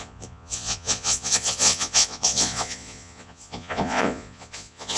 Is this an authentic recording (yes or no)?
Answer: no